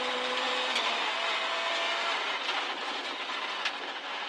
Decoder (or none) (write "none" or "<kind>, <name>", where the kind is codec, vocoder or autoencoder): none